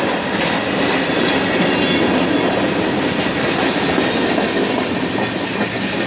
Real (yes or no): yes